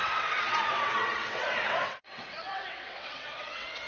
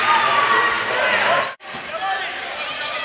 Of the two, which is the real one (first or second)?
second